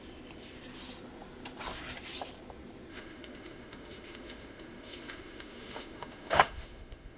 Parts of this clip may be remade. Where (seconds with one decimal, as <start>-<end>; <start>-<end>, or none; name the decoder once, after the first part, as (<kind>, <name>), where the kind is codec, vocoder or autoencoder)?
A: 2.9-7.2 (autoencoder, DAC-VAE)